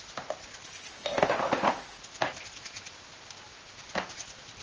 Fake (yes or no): no